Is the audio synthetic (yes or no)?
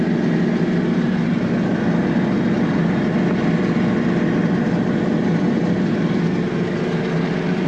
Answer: no